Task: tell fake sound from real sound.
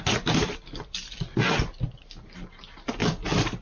real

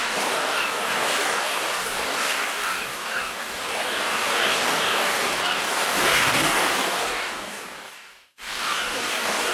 fake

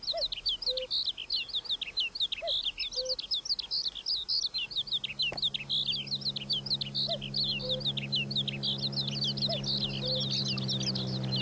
real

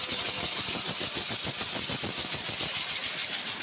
real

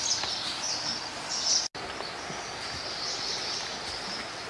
real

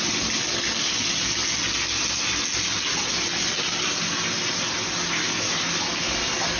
real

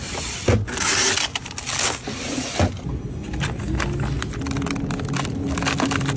real